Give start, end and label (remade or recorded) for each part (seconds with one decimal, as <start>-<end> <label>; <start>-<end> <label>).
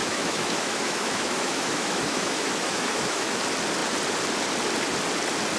0.0-3.4 remade; 3.4-5.6 recorded